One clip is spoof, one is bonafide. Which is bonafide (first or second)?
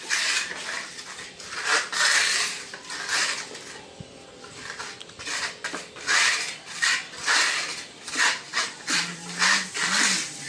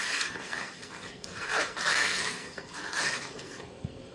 first